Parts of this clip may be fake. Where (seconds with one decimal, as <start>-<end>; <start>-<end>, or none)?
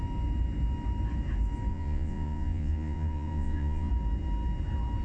1.7-3.9